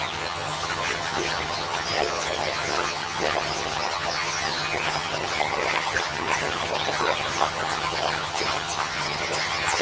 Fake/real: fake